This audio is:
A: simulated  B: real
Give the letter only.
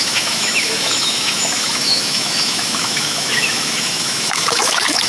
A